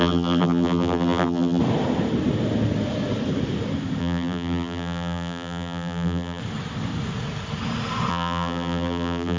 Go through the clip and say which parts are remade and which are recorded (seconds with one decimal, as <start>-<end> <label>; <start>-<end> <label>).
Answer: 0.0-1.6 remade; 1.6-4.0 recorded; 4.0-6.4 remade; 6.4-8.1 recorded; 8.1-9.4 remade